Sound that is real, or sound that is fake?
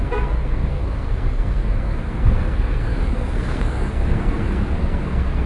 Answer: fake